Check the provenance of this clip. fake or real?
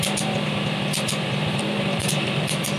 fake